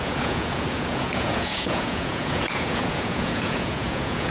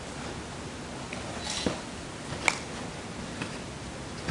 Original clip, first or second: second